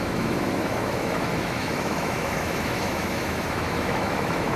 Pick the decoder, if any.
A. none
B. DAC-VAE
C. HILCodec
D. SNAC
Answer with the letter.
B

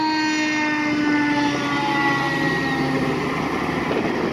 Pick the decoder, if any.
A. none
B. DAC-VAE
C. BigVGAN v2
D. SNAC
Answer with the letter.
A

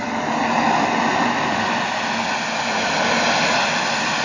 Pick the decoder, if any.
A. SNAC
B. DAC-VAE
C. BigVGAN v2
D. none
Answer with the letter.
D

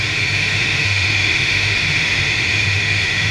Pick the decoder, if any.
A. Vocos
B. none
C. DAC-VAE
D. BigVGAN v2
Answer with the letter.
C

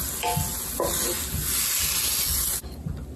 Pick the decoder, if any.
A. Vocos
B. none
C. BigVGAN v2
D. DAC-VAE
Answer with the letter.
B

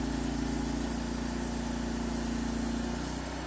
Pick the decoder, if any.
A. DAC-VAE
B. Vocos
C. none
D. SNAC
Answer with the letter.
C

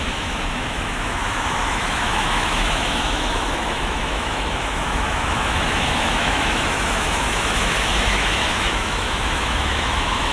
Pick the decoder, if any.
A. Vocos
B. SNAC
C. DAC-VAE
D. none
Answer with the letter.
C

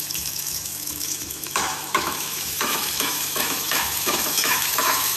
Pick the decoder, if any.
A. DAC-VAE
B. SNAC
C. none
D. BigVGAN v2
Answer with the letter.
A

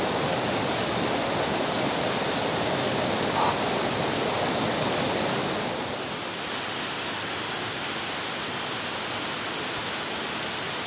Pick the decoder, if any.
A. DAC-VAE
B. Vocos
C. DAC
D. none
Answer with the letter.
D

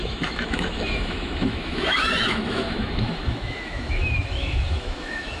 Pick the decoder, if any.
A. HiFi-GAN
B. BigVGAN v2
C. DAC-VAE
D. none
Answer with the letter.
C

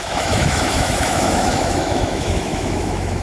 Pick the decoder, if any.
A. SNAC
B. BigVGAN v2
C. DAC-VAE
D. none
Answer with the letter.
C